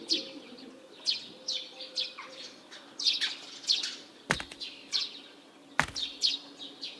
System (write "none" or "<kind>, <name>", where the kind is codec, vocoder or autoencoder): none